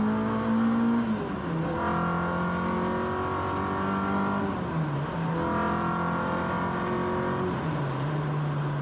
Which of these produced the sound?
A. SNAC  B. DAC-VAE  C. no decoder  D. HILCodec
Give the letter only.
C